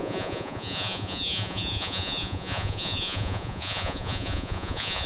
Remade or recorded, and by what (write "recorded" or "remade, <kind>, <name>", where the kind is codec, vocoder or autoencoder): remade, vocoder, Vocos